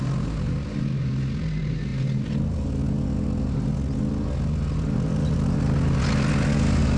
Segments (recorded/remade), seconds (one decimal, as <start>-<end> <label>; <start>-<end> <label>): 0.0-7.0 recorded